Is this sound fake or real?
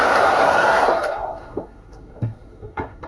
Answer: fake